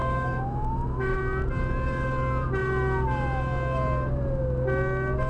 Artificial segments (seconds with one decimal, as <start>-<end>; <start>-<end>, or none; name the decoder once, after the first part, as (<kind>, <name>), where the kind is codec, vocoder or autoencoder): 0.0-1.2 (autoencoder, DAC-VAE)